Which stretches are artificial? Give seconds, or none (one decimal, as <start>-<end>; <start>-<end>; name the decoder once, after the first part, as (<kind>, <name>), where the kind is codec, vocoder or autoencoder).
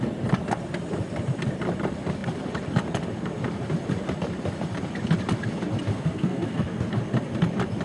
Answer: 5.9-6.9 (codec, SNAC)